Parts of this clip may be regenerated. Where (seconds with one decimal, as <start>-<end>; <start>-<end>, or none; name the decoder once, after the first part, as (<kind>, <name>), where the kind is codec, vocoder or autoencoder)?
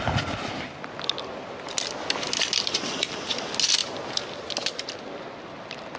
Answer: none